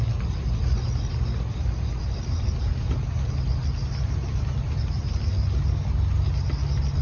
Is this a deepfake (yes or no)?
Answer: no